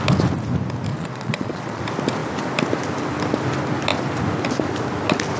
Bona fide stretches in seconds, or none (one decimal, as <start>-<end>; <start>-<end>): 0.0-0.9; 1.8-5.4